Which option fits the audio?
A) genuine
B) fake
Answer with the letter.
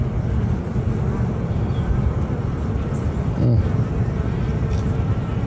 B